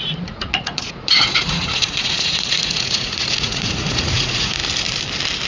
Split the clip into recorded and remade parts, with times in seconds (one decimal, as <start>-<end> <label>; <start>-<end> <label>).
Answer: 0.0-4.6 remade; 4.6-5.5 recorded